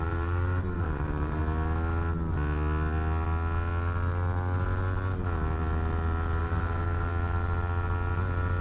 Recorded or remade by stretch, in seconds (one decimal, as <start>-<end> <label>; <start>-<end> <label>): 0.0-1.4 remade; 1.4-6.4 recorded; 6.4-7.1 remade; 7.1-8.6 recorded